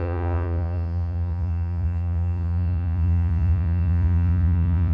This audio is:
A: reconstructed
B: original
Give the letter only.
A